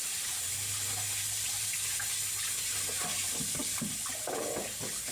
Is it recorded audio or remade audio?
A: recorded